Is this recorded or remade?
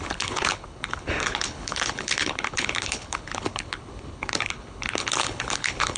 remade